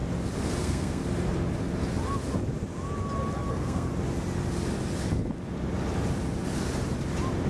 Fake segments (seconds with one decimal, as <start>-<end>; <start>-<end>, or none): 0.6-1.0; 3.5-3.9